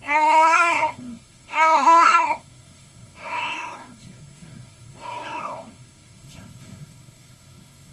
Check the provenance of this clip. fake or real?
fake